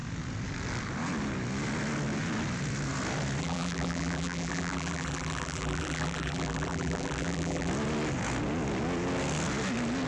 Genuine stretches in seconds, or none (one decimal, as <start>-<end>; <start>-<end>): 0.0-3.4; 7.7-10.1